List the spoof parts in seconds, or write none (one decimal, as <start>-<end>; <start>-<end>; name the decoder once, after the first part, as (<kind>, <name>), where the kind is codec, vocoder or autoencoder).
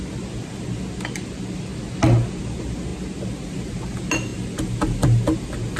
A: none